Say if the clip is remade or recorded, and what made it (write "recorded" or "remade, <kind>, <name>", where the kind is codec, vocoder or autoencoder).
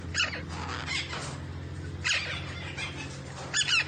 recorded